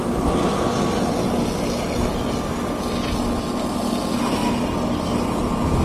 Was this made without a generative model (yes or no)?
yes